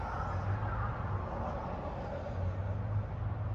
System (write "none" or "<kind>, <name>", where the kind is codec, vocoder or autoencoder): none